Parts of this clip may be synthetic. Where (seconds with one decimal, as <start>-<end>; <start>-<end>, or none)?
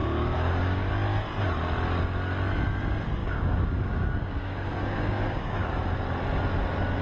0.0-0.9; 3.2-5.7